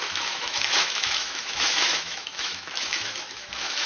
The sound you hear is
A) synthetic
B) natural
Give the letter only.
A